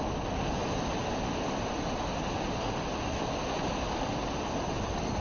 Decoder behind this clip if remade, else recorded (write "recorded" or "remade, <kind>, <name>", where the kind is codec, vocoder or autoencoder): recorded